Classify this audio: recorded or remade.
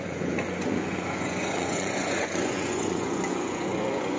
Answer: remade